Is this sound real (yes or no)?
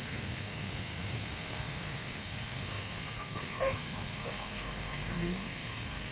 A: no